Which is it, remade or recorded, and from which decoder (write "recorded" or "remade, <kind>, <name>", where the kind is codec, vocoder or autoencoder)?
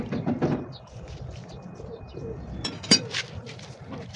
recorded